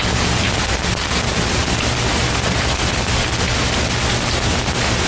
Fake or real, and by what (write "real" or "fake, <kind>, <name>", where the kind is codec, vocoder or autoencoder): real